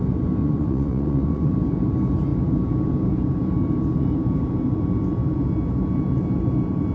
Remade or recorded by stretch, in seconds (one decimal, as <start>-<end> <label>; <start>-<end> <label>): 0.0-0.4 recorded; 0.4-1.5 remade; 1.5-6.9 recorded